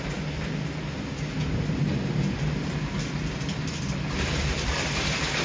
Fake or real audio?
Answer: real